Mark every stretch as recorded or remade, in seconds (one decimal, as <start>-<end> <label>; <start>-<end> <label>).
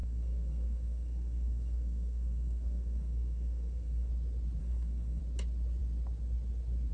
0.0-4.1 remade; 4.1-4.6 recorded; 4.6-5.2 remade; 5.2-6.9 recorded